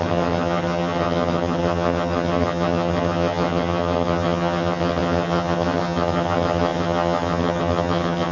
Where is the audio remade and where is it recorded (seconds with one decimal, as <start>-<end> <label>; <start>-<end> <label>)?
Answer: 0.0-8.3 remade